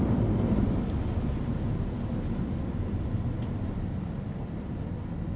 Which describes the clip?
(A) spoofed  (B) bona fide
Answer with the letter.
B